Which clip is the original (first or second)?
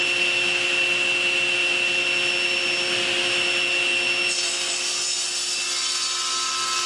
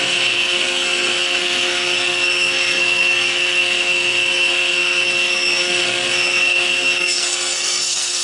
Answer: first